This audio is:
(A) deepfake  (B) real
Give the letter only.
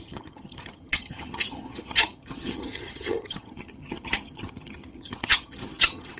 A